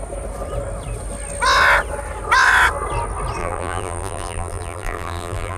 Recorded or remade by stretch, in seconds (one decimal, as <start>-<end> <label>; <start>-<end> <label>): 0.0-3.4 recorded; 3.4-5.6 remade